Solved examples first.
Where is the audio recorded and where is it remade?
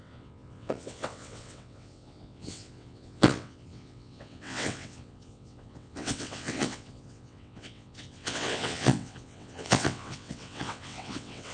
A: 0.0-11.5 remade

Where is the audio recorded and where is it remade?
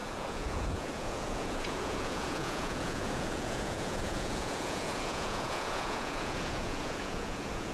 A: 0.0-7.7 remade